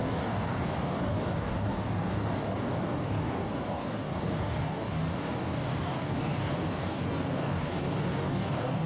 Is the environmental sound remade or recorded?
remade